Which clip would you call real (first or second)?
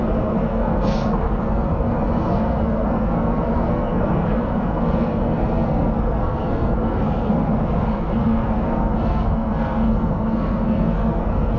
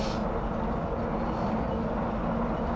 second